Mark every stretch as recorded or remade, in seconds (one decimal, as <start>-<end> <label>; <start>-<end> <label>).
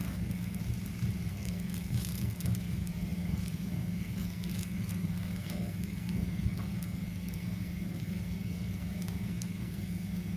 0.0-0.6 remade; 0.6-1.3 recorded; 1.3-10.4 remade